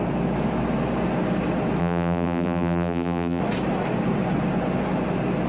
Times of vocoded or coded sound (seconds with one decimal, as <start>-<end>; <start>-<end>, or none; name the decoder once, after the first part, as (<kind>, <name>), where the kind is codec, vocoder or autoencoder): 1.8-3.4 (vocoder, BigVGAN v2)